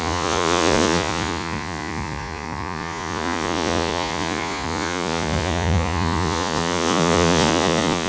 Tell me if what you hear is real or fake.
fake